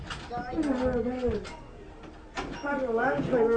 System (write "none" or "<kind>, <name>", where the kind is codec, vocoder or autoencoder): none